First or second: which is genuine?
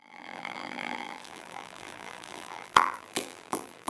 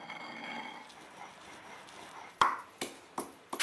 second